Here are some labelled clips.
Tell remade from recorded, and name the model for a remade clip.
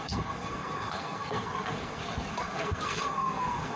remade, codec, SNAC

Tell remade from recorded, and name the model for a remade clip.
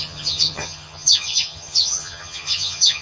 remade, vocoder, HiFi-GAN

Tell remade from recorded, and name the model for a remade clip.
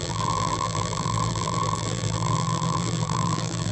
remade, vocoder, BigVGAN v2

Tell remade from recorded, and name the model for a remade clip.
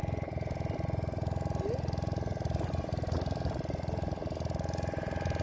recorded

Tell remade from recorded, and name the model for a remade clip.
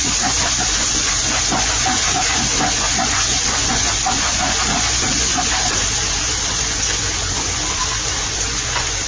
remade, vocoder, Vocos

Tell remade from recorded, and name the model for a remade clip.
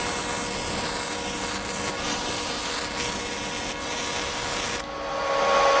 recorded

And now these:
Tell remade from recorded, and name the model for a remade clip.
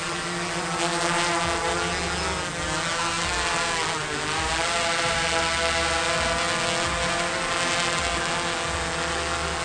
recorded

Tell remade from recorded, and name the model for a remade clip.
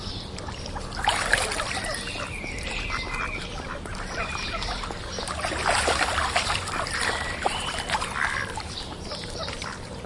remade, vocoder, BigVGAN v2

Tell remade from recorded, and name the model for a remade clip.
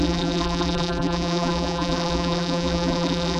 remade, vocoder, BigVGAN v2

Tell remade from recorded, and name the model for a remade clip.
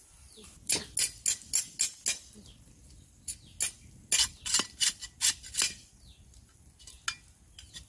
recorded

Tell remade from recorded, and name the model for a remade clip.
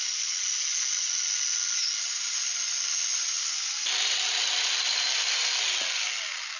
recorded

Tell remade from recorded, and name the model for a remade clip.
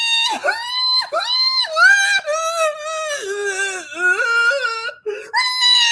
recorded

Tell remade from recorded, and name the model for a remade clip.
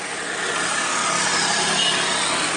remade, vocoder, BigVGAN v2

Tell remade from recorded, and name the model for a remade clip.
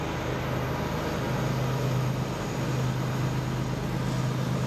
recorded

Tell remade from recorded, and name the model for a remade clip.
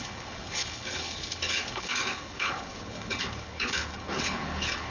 remade, codec, HILCodec